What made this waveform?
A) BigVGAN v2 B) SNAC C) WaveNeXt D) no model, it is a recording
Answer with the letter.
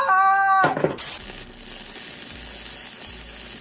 D